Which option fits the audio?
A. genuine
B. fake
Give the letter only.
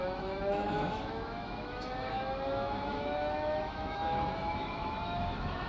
B